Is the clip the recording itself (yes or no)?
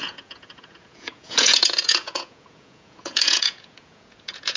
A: no